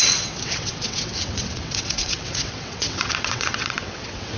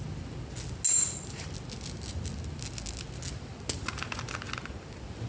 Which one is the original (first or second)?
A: second